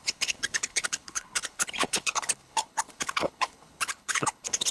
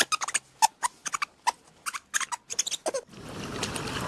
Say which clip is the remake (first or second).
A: first